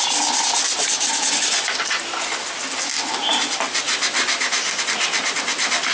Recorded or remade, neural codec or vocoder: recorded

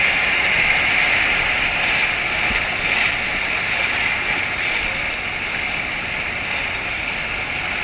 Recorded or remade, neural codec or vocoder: recorded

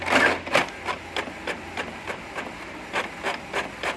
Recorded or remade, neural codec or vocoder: recorded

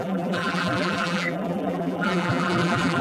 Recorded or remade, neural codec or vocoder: remade, vocoder, BigVGAN v2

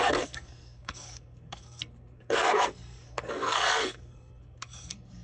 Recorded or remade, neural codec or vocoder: remade, codec, SNAC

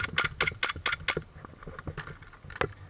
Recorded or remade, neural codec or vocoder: recorded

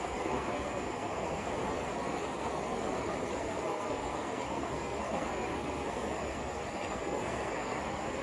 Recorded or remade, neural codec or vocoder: remade, codec, SNAC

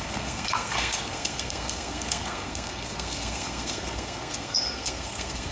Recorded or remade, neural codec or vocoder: remade, codec, SNAC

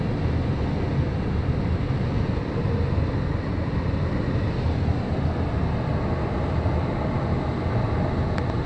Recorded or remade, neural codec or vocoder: recorded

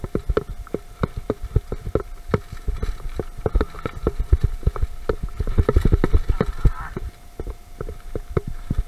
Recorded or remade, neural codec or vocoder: recorded